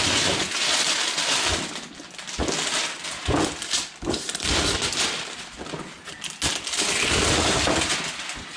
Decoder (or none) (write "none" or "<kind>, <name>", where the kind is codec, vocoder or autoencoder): none